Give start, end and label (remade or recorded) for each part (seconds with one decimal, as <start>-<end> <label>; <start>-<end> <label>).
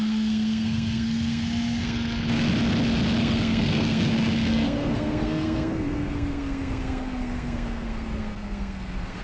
0.0-2.5 remade; 2.5-3.2 recorded; 3.2-9.2 remade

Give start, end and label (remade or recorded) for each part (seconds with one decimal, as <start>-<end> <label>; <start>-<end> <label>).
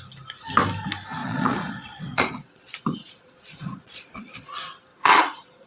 0.0-1.2 recorded; 1.2-4.5 remade; 4.5-4.9 recorded; 4.9-5.7 remade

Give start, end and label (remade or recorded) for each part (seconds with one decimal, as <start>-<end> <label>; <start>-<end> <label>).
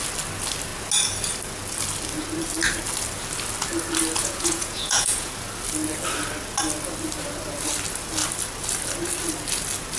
0.0-4.2 recorded; 4.2-5.3 remade; 5.3-10.0 recorded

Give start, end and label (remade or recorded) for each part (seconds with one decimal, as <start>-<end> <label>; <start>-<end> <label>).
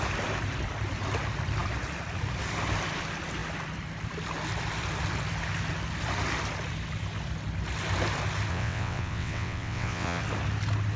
0.0-8.5 recorded; 8.5-10.2 remade; 10.2-11.0 recorded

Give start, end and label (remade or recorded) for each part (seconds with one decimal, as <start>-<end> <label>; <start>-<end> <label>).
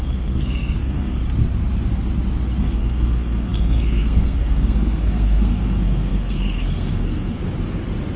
0.0-1.2 remade; 1.2-2.6 recorded; 2.6-7.4 remade; 7.4-8.2 recorded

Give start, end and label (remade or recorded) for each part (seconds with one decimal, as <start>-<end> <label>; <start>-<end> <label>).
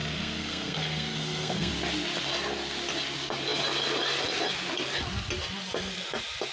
0.0-1.7 remade; 1.7-6.5 recorded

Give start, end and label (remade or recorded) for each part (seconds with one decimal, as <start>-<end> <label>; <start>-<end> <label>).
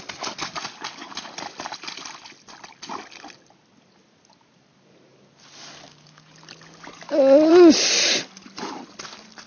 0.0-9.5 recorded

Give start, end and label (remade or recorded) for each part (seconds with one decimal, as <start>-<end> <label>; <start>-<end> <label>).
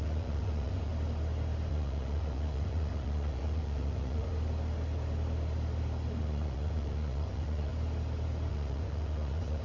0.0-0.9 remade; 0.9-1.7 recorded; 1.7-4.3 remade; 4.3-6.2 recorded; 6.2-7.7 remade; 7.7-8.5 recorded; 8.5-9.6 remade